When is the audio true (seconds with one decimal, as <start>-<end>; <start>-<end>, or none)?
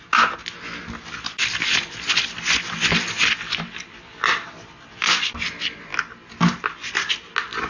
0.0-7.7